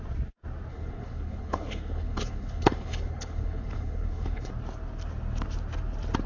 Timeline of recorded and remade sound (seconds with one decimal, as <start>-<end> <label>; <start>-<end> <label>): 0.0-0.7 recorded; 0.7-4.5 remade; 4.5-6.3 recorded